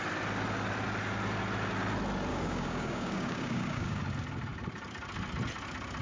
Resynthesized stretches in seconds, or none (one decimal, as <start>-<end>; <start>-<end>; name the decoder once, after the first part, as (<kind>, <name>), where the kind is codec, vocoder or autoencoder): 2.3-4.0 (codec, DAC)